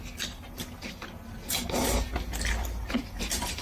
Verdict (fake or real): real